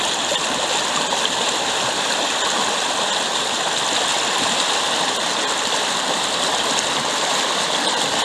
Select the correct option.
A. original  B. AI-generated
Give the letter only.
A